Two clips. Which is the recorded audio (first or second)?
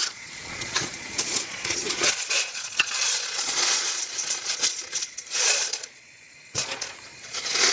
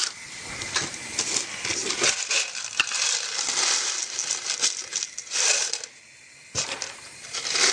second